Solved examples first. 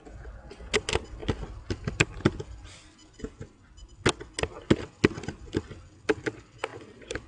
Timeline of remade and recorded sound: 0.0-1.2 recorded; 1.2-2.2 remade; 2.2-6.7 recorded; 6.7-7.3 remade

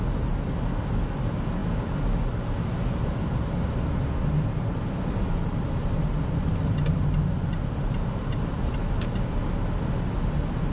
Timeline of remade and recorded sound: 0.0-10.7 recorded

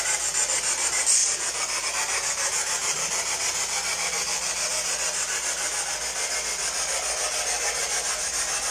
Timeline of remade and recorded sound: 0.0-1.2 recorded; 1.2-1.9 remade; 1.9-2.8 recorded; 2.8-4.7 remade; 4.7-8.7 recorded

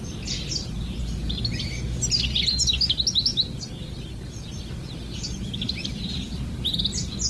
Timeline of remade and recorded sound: 0.0-7.3 recorded